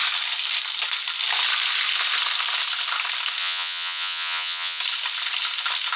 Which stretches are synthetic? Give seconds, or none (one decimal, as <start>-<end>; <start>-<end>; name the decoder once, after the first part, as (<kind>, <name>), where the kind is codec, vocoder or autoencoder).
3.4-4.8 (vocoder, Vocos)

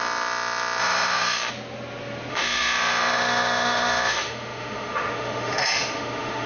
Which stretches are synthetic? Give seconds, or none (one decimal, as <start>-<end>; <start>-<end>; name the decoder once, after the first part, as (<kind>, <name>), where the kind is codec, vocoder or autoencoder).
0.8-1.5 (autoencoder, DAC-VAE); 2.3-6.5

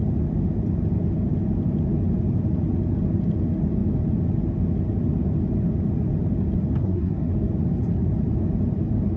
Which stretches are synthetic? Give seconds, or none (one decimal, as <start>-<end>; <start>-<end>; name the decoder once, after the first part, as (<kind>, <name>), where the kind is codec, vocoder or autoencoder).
6.8-7.3 (codec, SNAC)

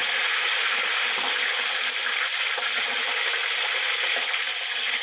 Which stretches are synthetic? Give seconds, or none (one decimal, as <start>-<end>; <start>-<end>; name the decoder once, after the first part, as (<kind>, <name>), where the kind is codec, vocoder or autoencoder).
none